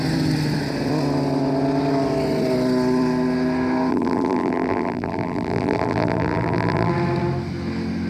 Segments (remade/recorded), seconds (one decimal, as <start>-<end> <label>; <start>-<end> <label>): 0.0-3.9 recorded; 3.9-6.9 remade; 6.9-8.1 recorded

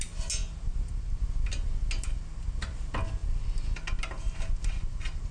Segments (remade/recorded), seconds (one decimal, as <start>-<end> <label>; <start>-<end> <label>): 0.0-5.3 recorded

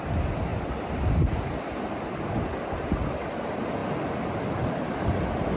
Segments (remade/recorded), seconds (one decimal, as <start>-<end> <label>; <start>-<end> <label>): 0.0-0.5 recorded; 0.5-2.9 remade; 2.9-5.6 recorded

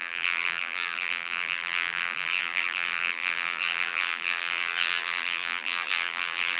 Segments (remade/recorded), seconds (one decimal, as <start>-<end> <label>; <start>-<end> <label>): 0.0-6.6 remade

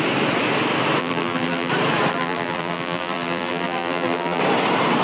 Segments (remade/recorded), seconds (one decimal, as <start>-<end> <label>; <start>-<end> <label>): 0.0-1.0 recorded; 1.0-1.7 remade; 1.7-2.1 recorded; 2.1-4.4 remade; 4.4-5.0 recorded

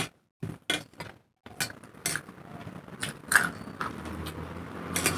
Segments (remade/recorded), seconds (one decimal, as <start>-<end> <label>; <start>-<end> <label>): 0.0-5.2 recorded

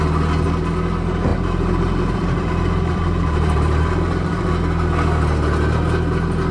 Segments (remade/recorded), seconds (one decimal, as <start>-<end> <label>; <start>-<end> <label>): 0.0-1.3 recorded; 1.3-4.5 remade; 4.5-6.5 recorded